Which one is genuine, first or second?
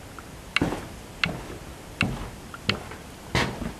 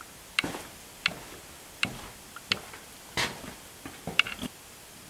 first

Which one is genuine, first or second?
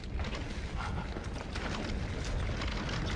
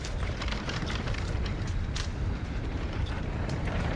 first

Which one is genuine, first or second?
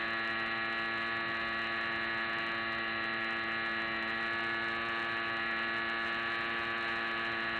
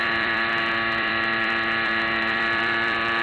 first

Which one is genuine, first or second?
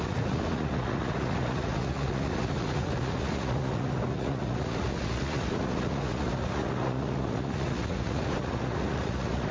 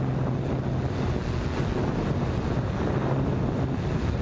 second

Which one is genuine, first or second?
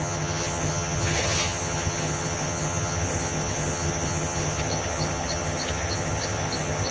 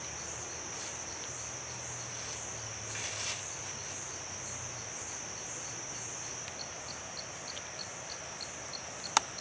second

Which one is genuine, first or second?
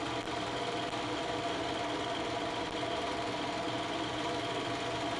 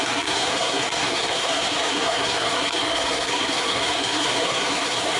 first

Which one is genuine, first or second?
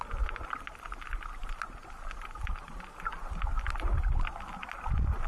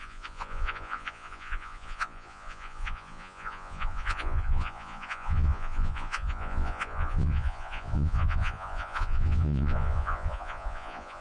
first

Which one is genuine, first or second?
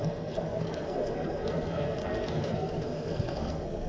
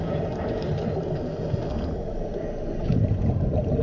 second